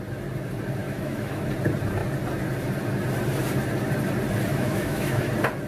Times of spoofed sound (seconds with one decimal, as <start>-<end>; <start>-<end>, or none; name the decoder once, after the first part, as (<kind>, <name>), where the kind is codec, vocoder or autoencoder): 0.8-1.4 (autoencoder, DAC-VAE); 4.5-5.3